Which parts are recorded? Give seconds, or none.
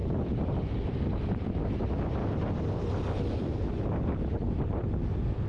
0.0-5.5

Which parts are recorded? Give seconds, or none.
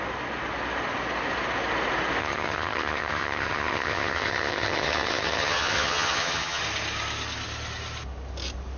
0.0-2.2; 6.6-8.8